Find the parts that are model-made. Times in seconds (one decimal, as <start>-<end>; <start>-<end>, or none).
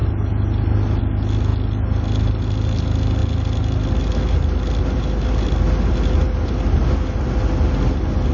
none